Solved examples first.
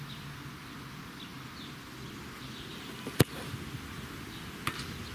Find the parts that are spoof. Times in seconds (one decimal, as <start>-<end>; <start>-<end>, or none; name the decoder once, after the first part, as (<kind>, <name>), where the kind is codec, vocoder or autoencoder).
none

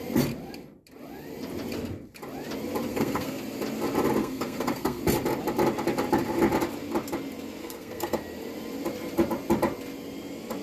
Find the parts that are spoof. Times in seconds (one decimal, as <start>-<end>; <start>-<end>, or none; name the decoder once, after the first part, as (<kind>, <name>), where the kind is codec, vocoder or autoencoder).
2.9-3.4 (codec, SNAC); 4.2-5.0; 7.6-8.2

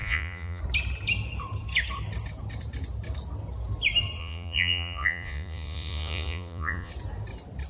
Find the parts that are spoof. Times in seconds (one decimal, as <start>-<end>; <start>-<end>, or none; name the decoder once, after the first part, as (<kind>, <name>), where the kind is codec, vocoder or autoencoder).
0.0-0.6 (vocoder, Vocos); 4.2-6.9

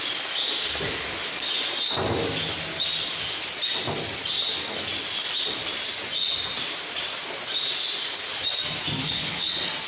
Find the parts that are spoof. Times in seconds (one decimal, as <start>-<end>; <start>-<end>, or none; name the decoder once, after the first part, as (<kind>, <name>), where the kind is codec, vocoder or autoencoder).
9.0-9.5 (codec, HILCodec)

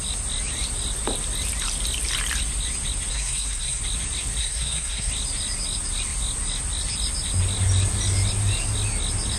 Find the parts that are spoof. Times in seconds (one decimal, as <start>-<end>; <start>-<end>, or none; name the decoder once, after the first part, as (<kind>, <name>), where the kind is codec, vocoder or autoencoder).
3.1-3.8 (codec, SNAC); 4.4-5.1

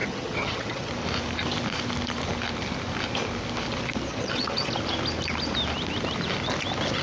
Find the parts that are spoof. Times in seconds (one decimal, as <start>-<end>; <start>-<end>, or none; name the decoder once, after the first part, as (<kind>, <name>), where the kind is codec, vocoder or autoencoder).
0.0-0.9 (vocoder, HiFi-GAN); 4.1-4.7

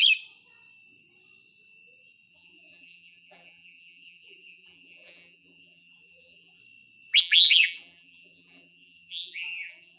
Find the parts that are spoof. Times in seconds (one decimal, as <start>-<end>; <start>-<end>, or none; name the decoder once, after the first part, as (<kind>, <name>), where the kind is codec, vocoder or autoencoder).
2.3-6.6 (vocoder, BigVGAN v2); 7.2-10.0

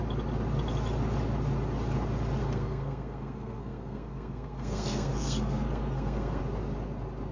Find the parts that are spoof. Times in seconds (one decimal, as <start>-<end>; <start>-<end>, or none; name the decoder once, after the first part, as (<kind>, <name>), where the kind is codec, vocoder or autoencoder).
2.4-6.4 (codec, SNAC)